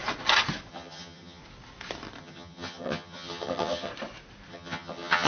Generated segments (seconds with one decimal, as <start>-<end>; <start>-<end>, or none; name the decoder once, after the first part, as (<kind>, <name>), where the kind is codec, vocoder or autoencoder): 0.7-1.4 (vocoder, HiFi-GAN); 2.2-3.9; 4.5-5.3